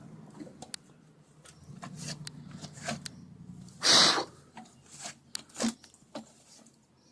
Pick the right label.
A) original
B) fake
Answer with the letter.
A